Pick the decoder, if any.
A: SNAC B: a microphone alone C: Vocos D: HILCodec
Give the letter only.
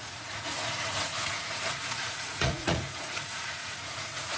C